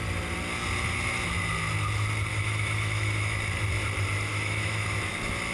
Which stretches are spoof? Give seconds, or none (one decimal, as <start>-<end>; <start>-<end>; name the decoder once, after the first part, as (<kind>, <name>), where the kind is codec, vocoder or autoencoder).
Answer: 2.3-3.4 (autoencoder, DAC-VAE); 4.3-4.9